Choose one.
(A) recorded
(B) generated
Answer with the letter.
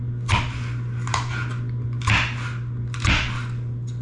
A